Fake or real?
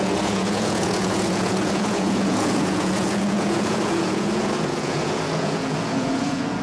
fake